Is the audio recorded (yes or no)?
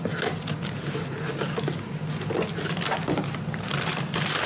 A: yes